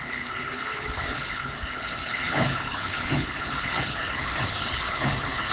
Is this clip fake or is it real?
fake